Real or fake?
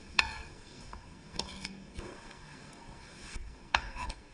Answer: fake